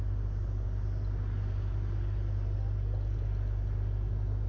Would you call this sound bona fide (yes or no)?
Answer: yes